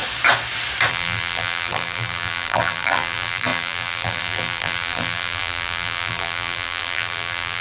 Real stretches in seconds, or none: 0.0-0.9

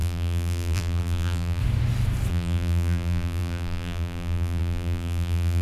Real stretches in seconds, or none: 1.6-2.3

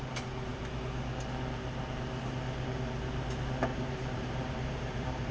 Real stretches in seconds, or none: 0.0-3.7